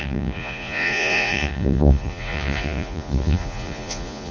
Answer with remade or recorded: remade